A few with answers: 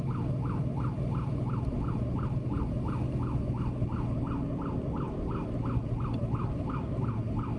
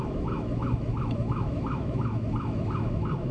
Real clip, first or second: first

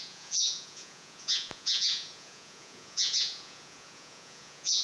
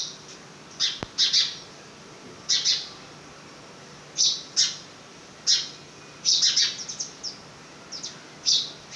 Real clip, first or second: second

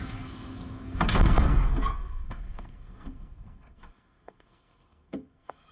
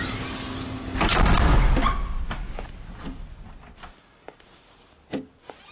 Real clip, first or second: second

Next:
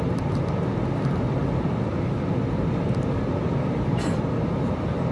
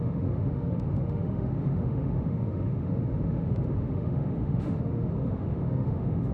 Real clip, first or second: first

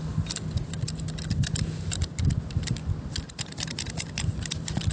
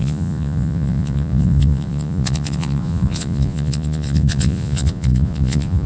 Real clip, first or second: first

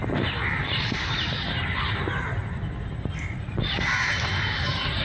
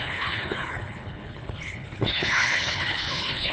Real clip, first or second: first